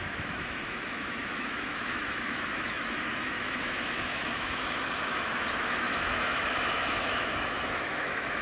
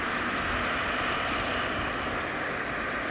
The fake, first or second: first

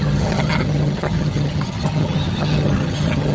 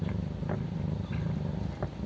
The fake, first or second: first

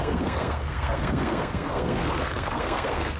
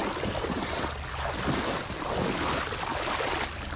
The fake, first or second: first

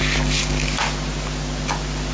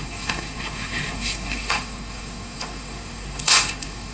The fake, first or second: second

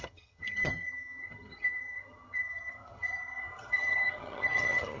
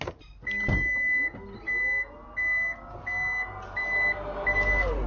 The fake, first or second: first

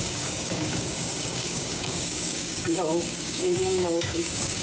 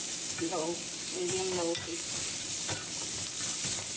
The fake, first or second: first